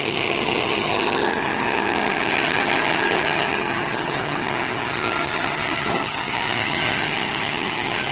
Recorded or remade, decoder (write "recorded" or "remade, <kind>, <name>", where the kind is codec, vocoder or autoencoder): remade, vocoder, HiFi-GAN